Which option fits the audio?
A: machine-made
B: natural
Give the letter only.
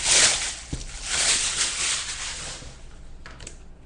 B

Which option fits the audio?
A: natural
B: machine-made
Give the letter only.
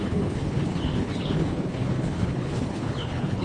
B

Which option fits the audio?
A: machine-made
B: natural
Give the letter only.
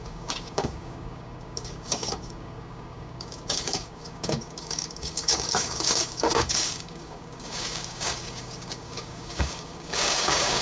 A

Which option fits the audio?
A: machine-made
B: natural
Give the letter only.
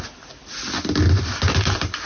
B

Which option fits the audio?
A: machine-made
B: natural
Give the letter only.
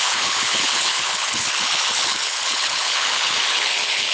A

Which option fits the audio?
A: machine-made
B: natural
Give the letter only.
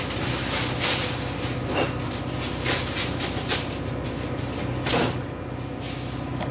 B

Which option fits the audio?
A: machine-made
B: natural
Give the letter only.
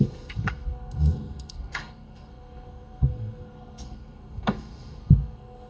A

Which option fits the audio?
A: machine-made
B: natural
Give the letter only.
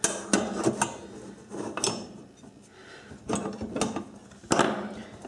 B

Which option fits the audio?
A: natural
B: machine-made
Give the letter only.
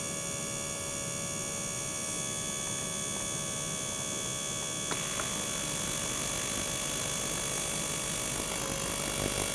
A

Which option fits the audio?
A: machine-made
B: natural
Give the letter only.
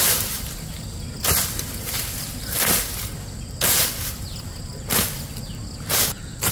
B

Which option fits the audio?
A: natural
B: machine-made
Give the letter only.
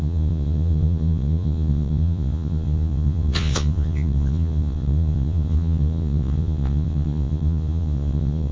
B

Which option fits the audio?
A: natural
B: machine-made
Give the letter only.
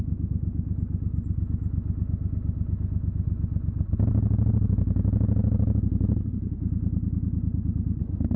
A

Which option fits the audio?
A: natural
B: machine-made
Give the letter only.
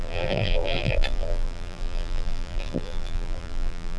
B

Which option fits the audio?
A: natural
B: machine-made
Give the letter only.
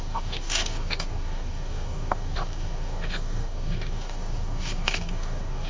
B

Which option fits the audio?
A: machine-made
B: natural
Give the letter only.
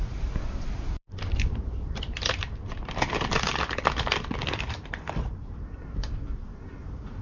A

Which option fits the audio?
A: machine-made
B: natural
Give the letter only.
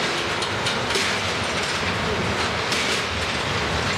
B